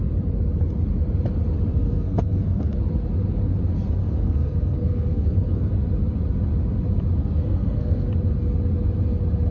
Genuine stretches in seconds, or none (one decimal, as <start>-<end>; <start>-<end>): 0.0-1.7; 2.8-4.0; 5.7-7.2; 8.1-9.5